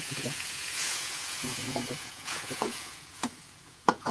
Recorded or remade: remade